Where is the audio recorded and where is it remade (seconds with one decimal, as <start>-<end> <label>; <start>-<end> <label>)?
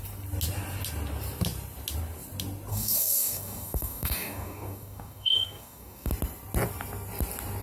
0.0-2.7 recorded; 2.7-6.1 remade; 6.1-7.6 recorded